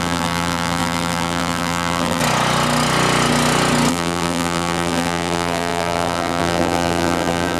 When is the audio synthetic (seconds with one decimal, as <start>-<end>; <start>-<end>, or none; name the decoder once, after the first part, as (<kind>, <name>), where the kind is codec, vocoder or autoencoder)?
0.0-2.2 (vocoder, BigVGAN v2); 3.9-7.6